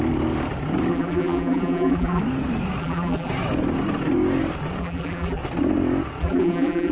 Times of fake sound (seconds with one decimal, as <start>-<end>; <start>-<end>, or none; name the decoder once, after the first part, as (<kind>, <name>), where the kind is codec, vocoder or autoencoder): 0.9-2.2 (vocoder, BigVGAN v2); 2.8-3.3; 4.8-5.4; 6.2-6.9